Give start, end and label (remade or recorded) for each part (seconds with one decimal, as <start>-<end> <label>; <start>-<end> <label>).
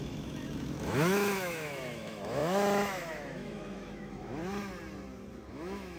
0.0-4.4 remade; 4.4-5.5 recorded; 5.5-6.0 remade